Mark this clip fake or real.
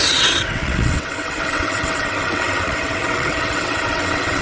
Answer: fake